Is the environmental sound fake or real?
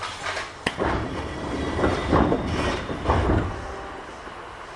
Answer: real